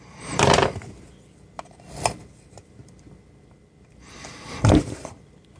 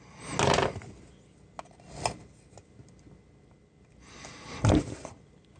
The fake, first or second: first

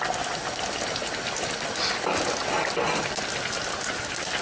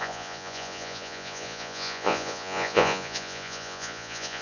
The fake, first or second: second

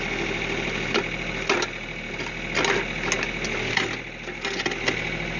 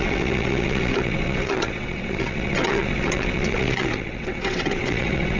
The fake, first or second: second